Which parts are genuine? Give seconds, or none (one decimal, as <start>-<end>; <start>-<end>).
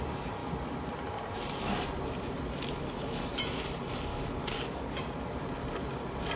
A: 0.0-2.8; 3.4-4.1; 5.0-6.4